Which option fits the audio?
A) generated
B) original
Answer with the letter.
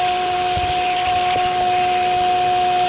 B